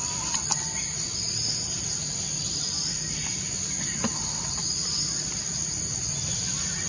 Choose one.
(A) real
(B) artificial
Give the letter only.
A